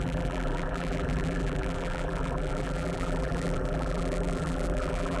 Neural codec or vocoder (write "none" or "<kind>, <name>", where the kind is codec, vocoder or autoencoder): vocoder, BigVGAN v2